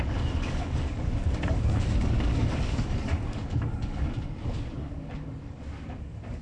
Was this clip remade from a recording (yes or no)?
yes